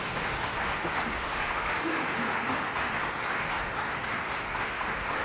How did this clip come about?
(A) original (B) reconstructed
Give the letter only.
B